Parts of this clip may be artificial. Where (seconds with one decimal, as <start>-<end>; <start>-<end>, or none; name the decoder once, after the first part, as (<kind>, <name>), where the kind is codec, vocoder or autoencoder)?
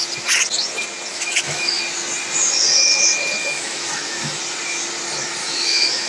1.1-1.8 (autoencoder, DAC-VAE); 3.4-4.4; 5.4-6.1